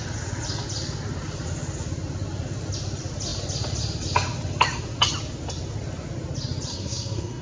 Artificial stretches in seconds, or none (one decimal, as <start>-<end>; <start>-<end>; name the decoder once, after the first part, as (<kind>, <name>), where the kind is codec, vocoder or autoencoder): 6.7-7.4 (codec, SNAC)